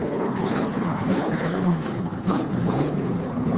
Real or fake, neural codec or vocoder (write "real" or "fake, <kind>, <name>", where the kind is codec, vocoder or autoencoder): fake, codec, HILCodec